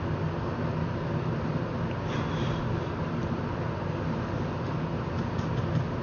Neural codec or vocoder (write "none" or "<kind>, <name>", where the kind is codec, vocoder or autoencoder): none